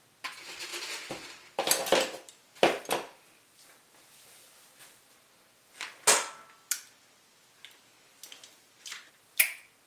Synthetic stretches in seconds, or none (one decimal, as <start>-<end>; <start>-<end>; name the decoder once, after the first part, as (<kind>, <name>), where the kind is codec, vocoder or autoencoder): none